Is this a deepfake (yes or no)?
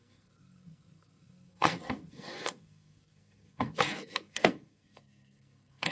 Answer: yes